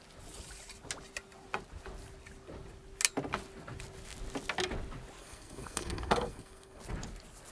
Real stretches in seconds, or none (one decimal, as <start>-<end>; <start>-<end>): 0.0-5.2; 6.8-7.5